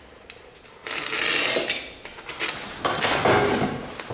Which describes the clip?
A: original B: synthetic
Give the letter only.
A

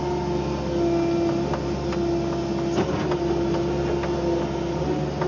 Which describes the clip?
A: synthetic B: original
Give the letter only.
B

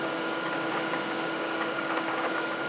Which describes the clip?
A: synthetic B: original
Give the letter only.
A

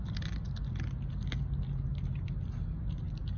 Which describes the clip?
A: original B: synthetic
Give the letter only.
A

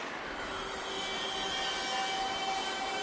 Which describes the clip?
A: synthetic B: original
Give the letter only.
B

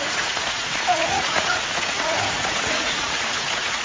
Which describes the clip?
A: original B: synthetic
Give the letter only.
B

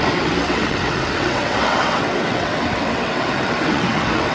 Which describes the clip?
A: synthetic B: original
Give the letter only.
A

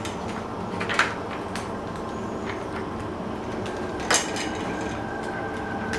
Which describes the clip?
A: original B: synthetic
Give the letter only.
A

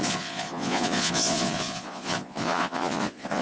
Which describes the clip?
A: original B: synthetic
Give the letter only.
B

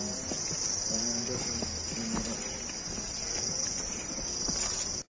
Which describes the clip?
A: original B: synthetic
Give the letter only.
A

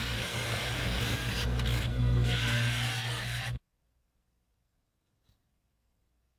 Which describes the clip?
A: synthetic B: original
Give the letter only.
A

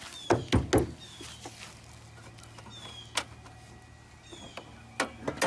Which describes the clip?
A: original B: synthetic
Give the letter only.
A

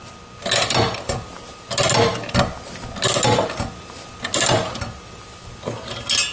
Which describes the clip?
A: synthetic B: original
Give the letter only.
B